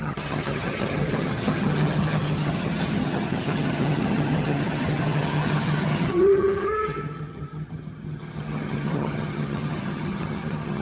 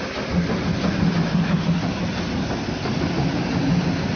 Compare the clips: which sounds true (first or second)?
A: second